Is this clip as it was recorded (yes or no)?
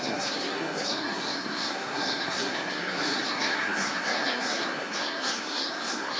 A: no